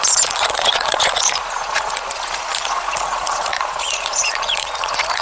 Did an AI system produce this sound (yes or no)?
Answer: yes